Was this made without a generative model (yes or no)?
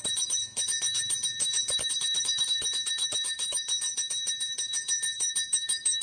no